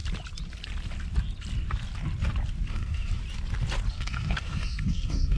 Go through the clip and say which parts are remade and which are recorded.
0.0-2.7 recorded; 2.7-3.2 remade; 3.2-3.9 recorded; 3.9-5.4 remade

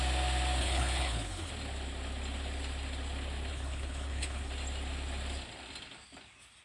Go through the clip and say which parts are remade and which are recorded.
0.0-0.6 recorded; 0.6-1.5 remade; 1.5-3.5 recorded; 3.5-4.5 remade; 4.5-6.6 recorded

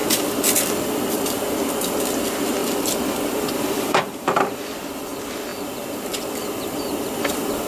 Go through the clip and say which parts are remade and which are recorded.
0.0-2.6 recorded; 2.6-4.7 remade; 4.7-7.7 recorded

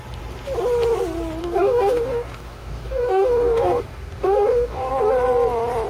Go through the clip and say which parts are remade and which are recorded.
0.0-1.4 recorded; 1.4-4.9 remade; 4.9-5.9 recorded